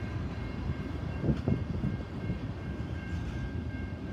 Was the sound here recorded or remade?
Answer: remade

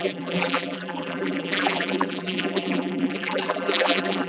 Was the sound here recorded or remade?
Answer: remade